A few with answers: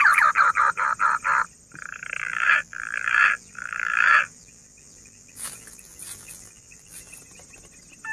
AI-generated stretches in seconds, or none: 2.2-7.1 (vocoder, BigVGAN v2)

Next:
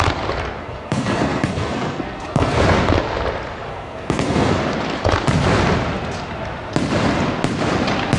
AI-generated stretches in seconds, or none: 0.6-2.6 (codec, SNAC); 3.7-4.6

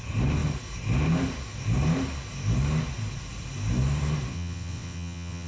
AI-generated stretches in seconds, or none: 4.3-5.5 (vocoder, WaveNeXt)

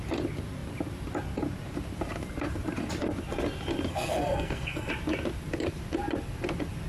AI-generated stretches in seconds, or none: 3.9-4.9 (codec, SNAC)

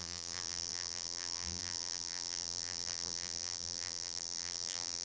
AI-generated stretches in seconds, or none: 0.0-5.0 (vocoder, BigVGAN v2)

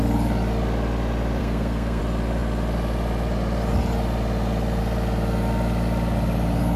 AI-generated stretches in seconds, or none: 1.4-2.0 (codec, SNAC)